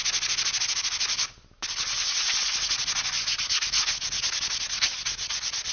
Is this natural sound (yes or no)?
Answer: yes